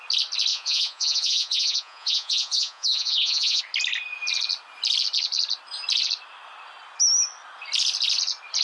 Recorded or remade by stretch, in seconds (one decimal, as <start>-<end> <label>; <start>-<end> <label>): 0.0-0.5 recorded; 0.5-3.6 remade; 3.6-8.6 recorded